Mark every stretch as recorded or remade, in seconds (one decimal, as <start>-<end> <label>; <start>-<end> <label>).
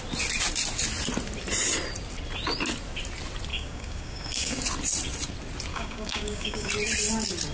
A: 0.0-3.5 recorded; 3.5-4.6 remade; 4.6-5.7 recorded; 5.7-6.7 remade; 6.7-7.5 recorded